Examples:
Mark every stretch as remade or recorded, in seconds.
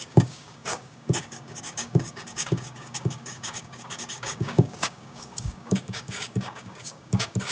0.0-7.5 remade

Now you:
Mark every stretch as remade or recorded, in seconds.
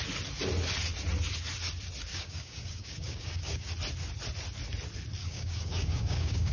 0.0-2.1 recorded; 2.1-3.7 remade; 3.7-5.2 recorded; 5.2-6.5 remade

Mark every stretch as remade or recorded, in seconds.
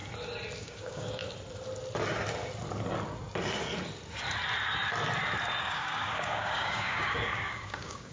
0.0-0.6 recorded; 0.6-1.2 remade; 1.2-5.6 recorded; 5.6-8.1 remade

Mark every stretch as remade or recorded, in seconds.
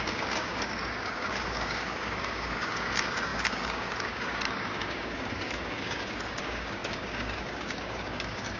0.0-8.6 remade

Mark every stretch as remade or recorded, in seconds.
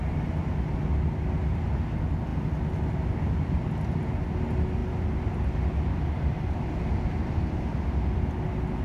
0.0-8.8 recorded